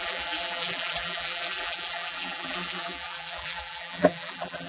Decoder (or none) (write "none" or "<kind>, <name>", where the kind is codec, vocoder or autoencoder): vocoder, BigVGAN v2